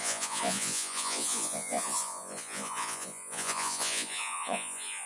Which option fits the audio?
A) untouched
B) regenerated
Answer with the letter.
B